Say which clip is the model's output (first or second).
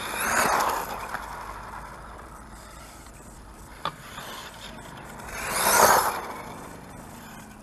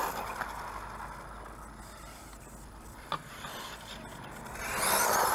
first